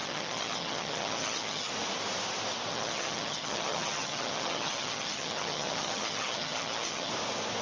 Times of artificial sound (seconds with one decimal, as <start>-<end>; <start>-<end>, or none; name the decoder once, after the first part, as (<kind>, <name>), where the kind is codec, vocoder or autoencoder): 0.0-1.7 (vocoder, HiFi-GAN); 2.7-7.1